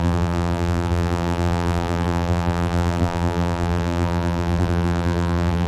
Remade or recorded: remade